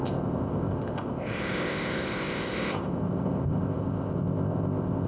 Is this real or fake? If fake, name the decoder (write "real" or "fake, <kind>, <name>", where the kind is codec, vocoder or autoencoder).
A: fake, codec, ZipCodec